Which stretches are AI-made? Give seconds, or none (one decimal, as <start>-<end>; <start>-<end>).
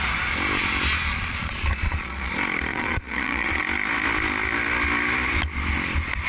1.1-2.3; 2.7-3.6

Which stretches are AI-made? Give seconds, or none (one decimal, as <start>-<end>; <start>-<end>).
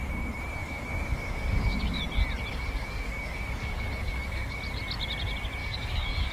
0.6-2.0; 2.5-4.6; 5.6-6.3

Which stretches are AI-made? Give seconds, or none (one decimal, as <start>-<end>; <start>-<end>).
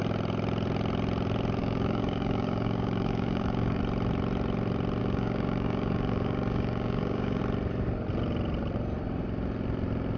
1.6-3.8; 5.0-7.4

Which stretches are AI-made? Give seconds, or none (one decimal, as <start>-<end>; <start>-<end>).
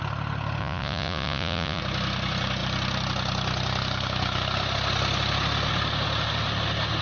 0.6-1.8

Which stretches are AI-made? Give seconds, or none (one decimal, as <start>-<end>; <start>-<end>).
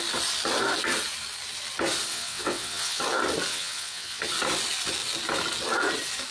2.1-3.0; 3.5-4.2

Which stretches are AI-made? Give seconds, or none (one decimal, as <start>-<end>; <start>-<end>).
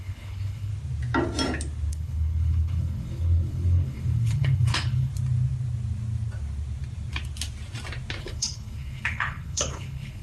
0.0-0.7; 1.9-5.1; 8.2-10.2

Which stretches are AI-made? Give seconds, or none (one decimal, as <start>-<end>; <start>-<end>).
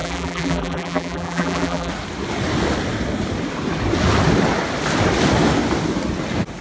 0.0-1.9